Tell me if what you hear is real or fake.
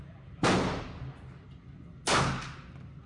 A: real